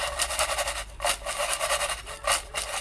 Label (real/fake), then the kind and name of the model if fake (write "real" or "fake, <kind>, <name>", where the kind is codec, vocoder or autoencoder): real